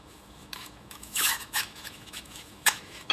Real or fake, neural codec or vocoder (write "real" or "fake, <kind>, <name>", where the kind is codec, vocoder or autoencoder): fake, autoencoder, DAC-VAE